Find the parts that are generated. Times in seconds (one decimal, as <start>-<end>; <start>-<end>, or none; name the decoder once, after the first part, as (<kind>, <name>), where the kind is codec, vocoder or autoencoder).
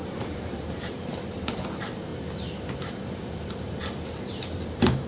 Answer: 0.0-2.1 (vocoder, BigVGAN v2); 2.9-5.1